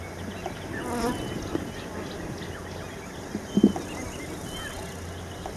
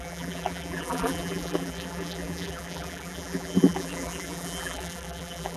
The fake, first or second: second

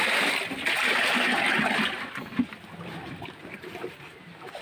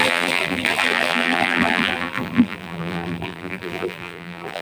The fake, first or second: second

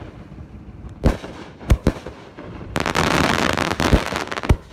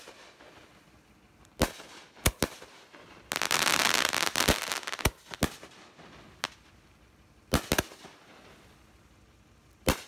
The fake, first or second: first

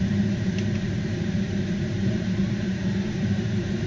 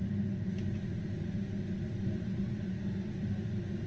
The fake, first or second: first